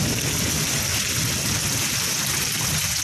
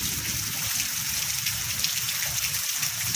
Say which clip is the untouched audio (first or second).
first